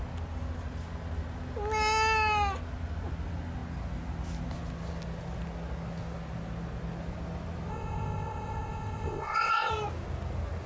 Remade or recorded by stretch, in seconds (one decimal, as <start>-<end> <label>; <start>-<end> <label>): 0.0-7.7 recorded; 7.7-9.7 remade; 9.7-10.7 recorded